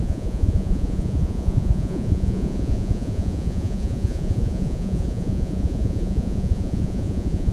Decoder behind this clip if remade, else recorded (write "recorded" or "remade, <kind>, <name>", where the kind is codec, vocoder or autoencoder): remade, vocoder, Vocos